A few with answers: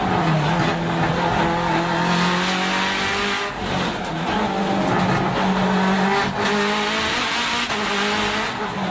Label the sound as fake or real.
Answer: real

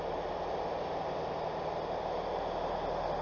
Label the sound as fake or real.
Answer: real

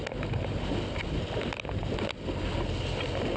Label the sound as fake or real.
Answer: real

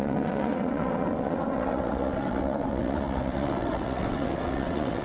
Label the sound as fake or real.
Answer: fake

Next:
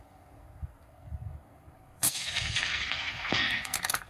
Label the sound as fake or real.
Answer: fake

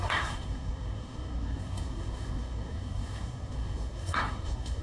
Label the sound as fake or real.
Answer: fake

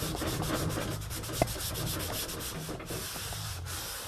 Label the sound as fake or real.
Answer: real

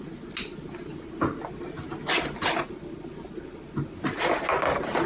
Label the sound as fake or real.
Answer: real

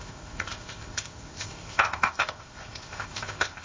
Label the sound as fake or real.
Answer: fake